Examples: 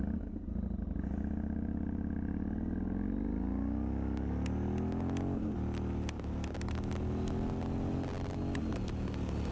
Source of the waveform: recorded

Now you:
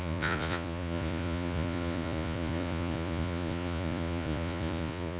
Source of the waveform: remade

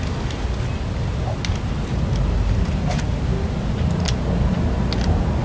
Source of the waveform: recorded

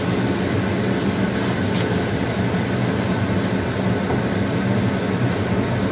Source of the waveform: recorded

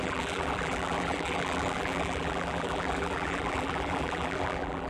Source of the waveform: remade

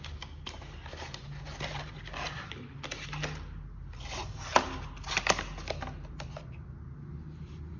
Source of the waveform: recorded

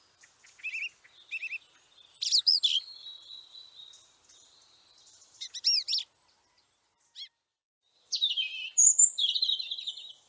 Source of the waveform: recorded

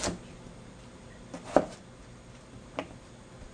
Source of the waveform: recorded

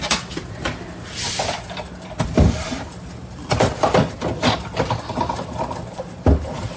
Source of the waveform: remade